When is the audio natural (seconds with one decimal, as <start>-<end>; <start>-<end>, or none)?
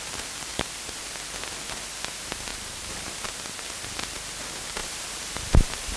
0.0-0.5; 1.0-2.5; 3.1-4.8